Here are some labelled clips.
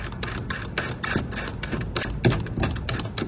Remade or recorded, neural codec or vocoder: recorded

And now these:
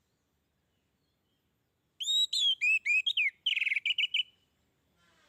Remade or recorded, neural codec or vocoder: recorded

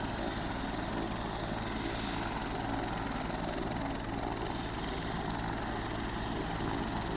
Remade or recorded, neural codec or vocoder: recorded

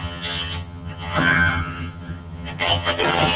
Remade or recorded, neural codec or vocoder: remade, vocoder, HiFi-GAN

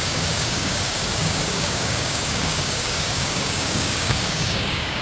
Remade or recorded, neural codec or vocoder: remade, codec, DAC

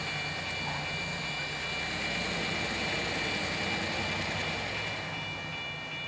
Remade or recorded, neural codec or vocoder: recorded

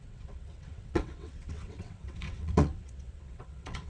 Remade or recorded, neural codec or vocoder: remade, vocoder, WaveNeXt